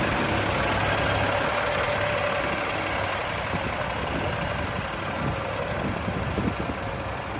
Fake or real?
real